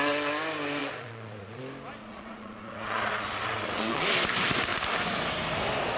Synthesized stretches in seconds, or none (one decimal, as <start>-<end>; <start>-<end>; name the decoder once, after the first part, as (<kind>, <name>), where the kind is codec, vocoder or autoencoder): 0.8-1.6 (vocoder, Vocos); 2.0-4.1